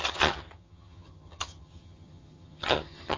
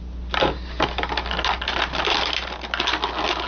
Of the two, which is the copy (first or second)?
first